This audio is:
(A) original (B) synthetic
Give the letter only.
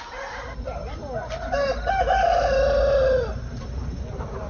A